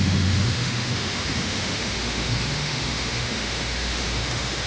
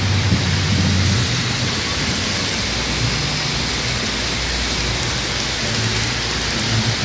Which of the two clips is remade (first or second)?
first